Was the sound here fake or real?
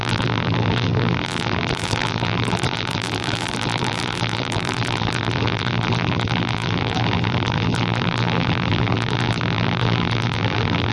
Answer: fake